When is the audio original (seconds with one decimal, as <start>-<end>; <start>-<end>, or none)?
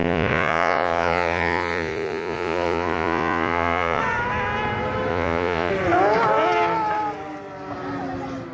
4.0-5.1; 5.7-8.5